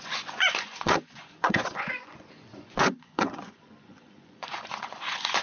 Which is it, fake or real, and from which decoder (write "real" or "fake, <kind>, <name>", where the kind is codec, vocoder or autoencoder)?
fake, vocoder, Vocos